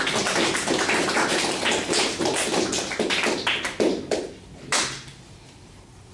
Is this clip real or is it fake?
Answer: real